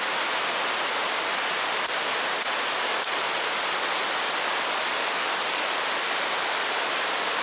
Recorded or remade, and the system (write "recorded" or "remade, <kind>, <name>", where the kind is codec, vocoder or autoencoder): recorded